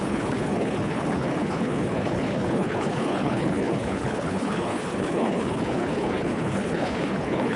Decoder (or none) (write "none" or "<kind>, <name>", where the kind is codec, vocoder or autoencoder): codec, HILCodec